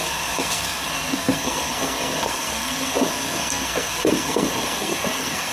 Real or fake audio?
fake